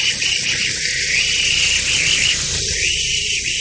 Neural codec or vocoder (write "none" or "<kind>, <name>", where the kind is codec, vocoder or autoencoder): none